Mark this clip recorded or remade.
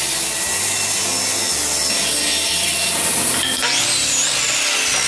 recorded